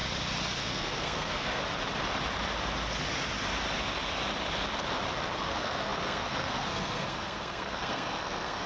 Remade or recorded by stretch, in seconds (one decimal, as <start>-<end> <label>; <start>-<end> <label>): 0.0-0.6 recorded; 0.6-1.6 remade; 1.6-5.4 recorded; 5.4-8.7 remade